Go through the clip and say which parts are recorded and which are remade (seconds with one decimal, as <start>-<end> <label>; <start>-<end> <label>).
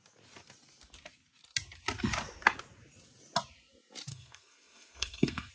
0.0-4.1 recorded; 4.1-5.5 remade